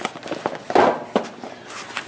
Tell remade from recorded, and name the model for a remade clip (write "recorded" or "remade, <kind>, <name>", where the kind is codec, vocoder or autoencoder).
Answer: recorded